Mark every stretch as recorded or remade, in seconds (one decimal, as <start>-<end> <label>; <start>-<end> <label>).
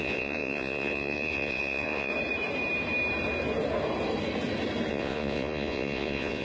0.0-2.1 remade; 2.1-4.9 recorded; 4.9-6.4 remade